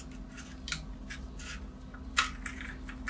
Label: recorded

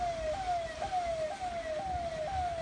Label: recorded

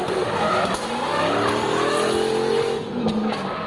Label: recorded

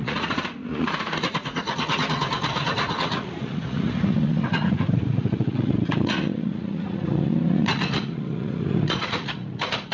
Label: remade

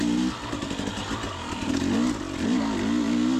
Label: recorded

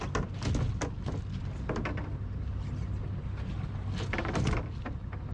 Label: recorded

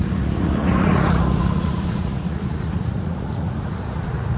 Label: remade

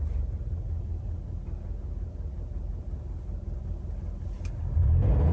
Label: recorded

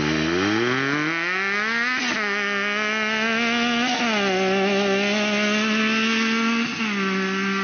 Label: recorded